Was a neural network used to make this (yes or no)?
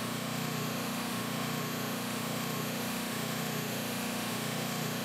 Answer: yes